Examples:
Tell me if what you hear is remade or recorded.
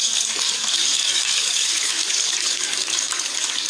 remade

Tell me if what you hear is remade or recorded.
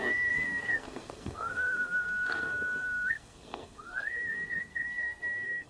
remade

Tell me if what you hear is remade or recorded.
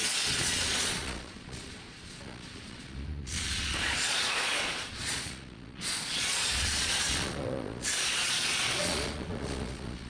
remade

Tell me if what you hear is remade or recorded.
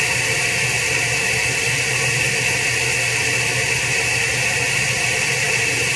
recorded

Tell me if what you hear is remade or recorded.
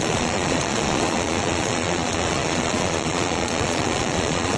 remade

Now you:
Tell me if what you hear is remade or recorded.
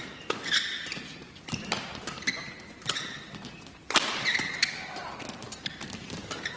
recorded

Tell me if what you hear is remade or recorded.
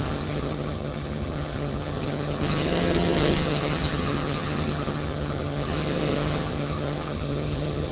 remade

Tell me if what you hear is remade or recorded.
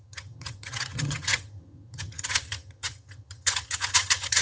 remade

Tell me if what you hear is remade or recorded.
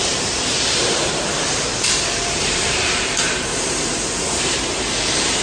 remade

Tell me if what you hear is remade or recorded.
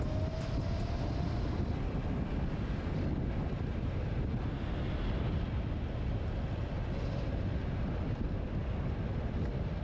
recorded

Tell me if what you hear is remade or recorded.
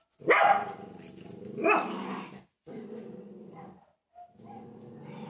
recorded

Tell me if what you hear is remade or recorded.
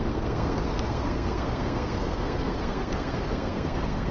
remade